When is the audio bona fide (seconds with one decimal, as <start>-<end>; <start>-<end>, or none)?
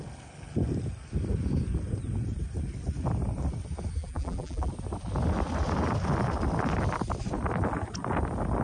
0.0-4.0; 4.7-8.6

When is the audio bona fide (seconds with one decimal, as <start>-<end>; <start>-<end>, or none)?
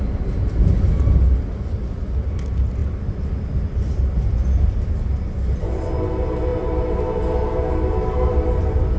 0.0-9.0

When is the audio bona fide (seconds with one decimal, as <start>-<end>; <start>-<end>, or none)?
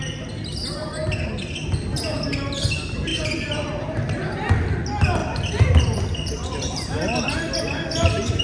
0.0-3.1; 3.7-5.2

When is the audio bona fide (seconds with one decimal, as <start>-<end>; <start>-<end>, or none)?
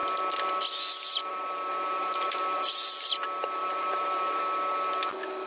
0.0-1.3; 3.1-3.6; 4.4-5.5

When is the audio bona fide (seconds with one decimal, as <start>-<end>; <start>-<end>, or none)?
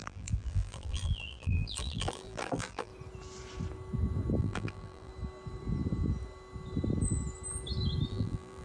2.9-4.4; 5.1-8.1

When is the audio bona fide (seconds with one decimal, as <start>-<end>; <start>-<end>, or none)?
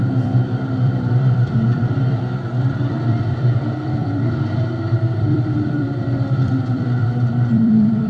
7.0-7.5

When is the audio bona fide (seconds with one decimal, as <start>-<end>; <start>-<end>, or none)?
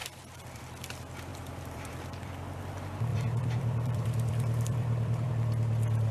0.6-1.3; 2.3-3.1; 5.3-6.1